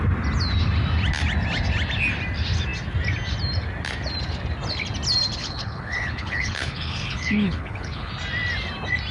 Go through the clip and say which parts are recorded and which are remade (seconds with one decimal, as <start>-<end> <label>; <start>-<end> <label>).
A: 0.0-5.4 recorded; 5.4-8.1 remade; 8.1-9.1 recorded